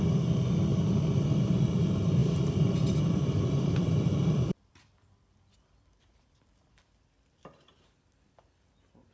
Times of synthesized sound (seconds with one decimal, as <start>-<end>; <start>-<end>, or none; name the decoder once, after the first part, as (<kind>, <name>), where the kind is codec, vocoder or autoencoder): 2.2-6.8 (vocoder, BigVGAN v2)